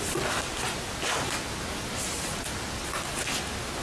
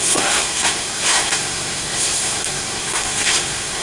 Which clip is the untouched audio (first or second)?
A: first